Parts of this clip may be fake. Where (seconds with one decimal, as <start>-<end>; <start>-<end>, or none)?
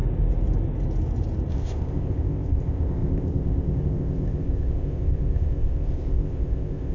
1.5-6.9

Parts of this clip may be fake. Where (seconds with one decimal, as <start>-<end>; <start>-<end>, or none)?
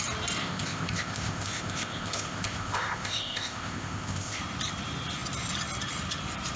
0.4-4.4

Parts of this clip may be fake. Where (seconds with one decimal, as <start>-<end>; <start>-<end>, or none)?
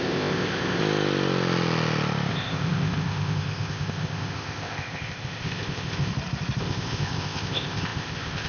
0.0-0.8; 2.3-6.1; 6.6-8.5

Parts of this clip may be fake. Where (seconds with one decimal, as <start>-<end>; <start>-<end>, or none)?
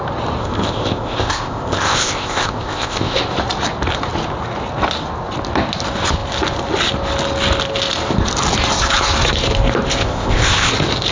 0.4-3.2; 10.0-10.7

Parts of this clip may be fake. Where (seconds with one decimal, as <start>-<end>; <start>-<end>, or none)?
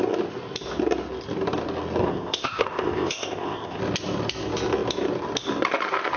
2.0-3.8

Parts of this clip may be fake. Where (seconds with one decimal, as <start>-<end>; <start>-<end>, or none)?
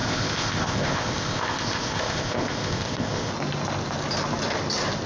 0.0-3.3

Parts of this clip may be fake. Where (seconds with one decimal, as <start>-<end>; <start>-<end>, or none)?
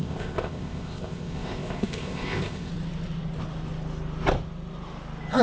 0.0-2.7